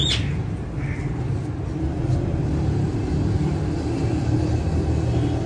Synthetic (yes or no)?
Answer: no